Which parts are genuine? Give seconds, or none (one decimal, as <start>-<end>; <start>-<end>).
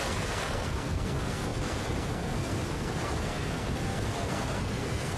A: none